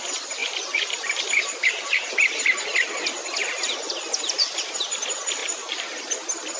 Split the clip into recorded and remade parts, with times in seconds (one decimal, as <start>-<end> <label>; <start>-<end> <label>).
0.0-0.4 recorded; 0.4-2.1 remade; 2.1-3.4 recorded; 3.4-4.7 remade; 4.7-5.4 recorded; 5.4-6.0 remade; 6.0-6.6 recorded